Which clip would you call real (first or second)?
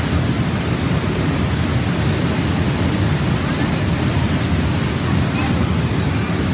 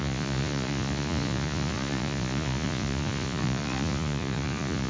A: first